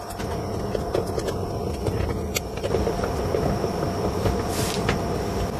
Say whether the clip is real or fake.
real